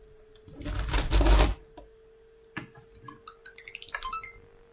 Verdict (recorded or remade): recorded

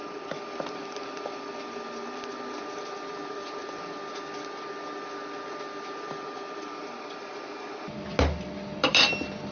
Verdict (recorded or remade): recorded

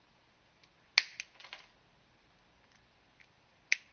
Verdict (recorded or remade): recorded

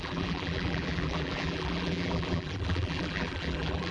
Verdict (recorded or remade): remade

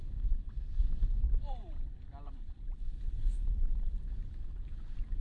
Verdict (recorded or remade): remade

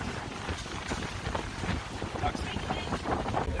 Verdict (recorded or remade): recorded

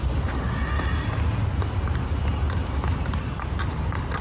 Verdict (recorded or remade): recorded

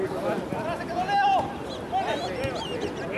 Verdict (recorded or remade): recorded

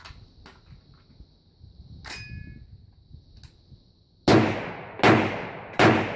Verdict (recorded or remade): recorded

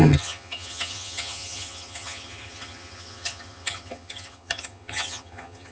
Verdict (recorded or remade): remade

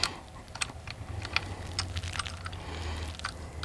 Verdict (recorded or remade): recorded